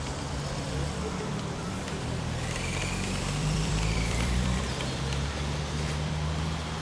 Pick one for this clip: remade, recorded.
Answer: remade